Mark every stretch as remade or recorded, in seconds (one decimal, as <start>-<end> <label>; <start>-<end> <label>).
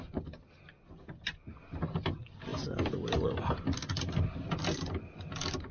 0.0-5.7 recorded